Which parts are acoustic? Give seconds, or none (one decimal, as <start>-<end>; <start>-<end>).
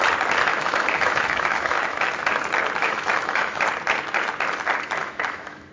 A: 0.0-0.5; 2.1-2.8; 3.6-5.0